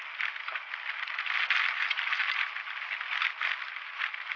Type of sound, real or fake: real